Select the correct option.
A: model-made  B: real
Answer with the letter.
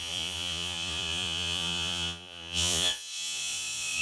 A